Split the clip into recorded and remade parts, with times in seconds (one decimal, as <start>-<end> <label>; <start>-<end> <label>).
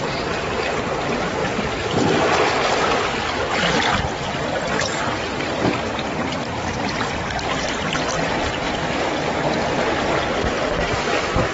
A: 0.0-11.5 recorded